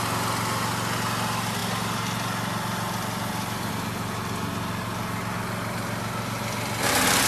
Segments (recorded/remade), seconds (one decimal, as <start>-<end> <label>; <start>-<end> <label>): 0.0-7.3 recorded